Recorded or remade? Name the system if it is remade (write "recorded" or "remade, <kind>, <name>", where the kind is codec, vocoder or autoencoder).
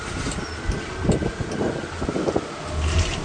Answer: recorded